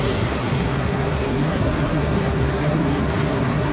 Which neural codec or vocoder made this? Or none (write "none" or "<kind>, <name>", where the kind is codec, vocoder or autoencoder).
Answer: codec, SNAC